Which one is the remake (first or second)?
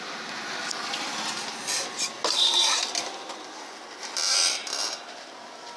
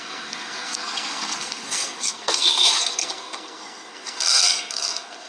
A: second